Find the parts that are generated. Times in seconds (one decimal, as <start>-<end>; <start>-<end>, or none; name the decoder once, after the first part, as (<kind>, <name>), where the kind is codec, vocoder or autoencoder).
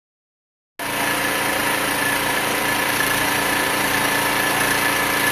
1.6-3.9 (vocoder, BigVGAN v2)